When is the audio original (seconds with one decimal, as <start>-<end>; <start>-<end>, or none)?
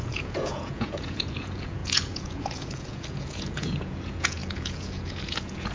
none